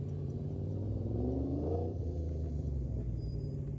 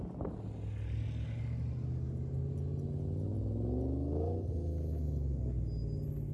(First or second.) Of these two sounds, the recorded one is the second